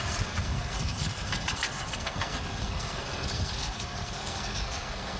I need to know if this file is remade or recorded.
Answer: remade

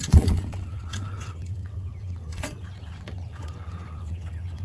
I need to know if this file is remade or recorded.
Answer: remade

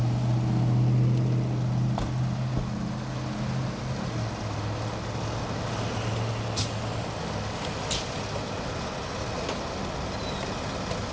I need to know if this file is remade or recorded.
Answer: recorded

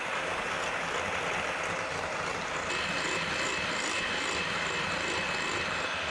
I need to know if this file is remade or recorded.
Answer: recorded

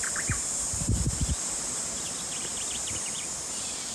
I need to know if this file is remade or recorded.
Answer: recorded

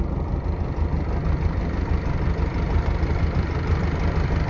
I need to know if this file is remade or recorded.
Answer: recorded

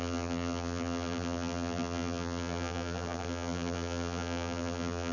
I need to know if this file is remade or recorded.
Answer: remade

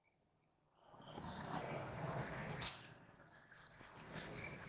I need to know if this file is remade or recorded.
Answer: remade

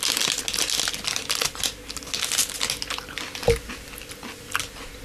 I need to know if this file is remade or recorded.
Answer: recorded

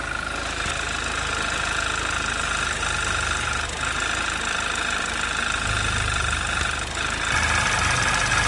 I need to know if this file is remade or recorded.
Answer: recorded